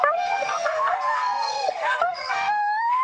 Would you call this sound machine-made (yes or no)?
yes